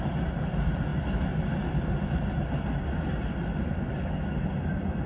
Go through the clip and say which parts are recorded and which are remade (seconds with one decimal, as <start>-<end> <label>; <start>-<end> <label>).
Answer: 0.0-5.1 recorded